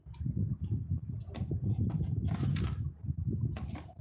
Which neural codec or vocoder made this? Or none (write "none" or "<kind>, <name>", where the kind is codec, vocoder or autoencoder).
none